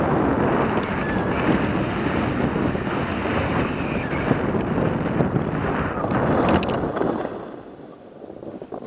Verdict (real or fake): real